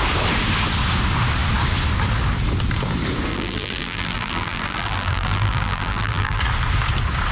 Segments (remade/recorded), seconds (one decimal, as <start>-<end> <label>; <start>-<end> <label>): 0.0-3.3 recorded; 3.3-6.4 remade; 6.4-7.3 recorded